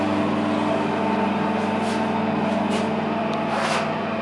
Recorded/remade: recorded